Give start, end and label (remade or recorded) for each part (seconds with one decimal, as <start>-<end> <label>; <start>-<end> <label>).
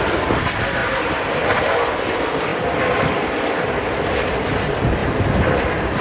0.0-0.8 remade; 0.8-1.9 recorded; 1.9-2.5 remade; 2.5-4.1 recorded; 4.1-5.0 remade; 5.0-5.6 recorded; 5.6-6.0 remade